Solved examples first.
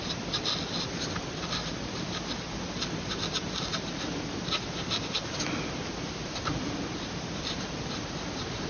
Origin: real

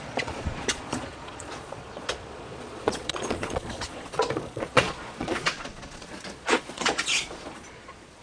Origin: fake